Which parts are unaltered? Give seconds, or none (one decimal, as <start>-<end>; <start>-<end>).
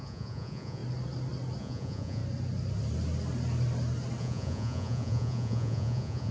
0.8-1.6; 2.2-4.2